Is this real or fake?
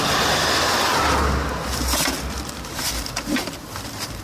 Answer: fake